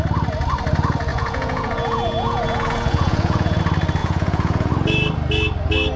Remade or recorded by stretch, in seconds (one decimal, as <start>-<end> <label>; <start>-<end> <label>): 0.0-1.1 recorded; 1.1-3.6 remade; 3.6-4.0 recorded; 4.0-4.7 remade; 4.7-6.0 recorded